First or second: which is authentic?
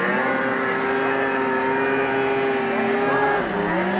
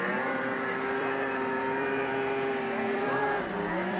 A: first